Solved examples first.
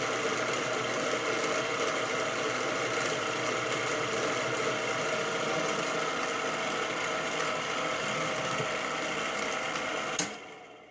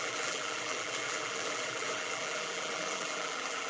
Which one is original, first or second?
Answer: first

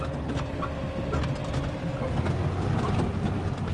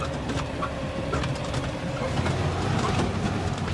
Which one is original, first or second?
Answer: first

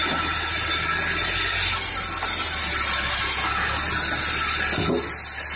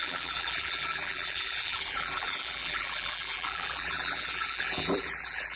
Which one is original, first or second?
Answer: first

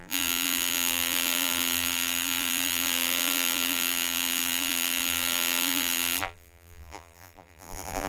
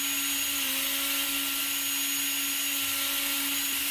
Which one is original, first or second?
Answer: second